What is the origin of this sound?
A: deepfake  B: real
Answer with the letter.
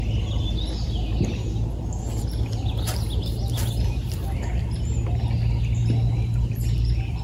B